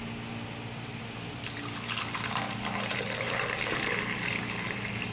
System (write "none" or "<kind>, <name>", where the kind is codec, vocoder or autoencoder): none